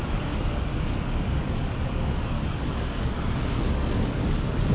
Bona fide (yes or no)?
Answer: no